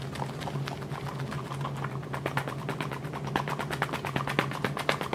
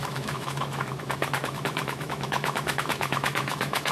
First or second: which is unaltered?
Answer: first